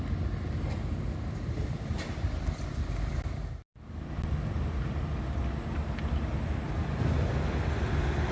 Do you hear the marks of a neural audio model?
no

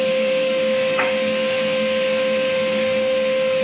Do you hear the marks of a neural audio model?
yes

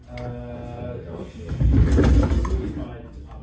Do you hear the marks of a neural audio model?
no